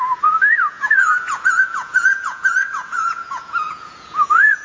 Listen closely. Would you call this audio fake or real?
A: fake